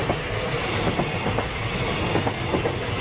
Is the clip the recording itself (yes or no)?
yes